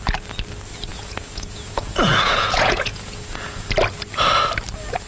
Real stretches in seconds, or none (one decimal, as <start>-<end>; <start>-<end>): 0.0-0.9; 3.7-5.1